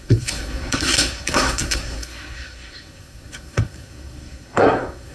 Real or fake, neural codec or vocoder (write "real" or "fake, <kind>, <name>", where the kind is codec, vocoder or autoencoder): fake, codec, SNAC